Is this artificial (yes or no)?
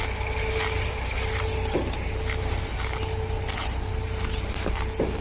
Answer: no